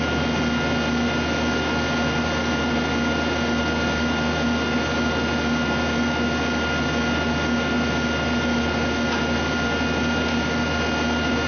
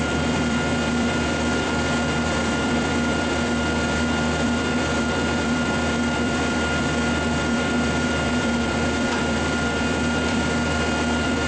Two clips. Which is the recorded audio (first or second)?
first